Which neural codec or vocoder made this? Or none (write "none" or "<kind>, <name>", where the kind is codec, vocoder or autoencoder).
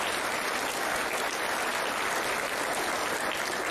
none